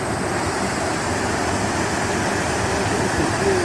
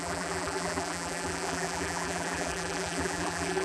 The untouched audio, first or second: first